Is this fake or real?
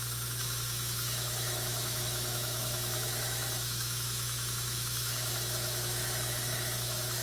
fake